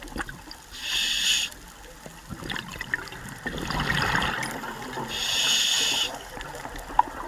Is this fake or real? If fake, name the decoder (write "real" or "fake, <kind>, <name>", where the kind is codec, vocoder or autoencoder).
real